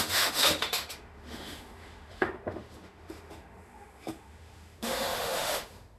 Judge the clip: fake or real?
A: fake